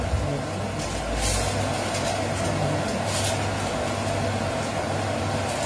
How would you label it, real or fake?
real